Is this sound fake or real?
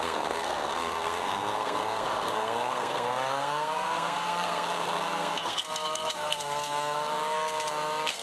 fake